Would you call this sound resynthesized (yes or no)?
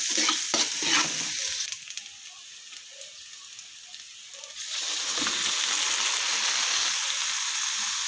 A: no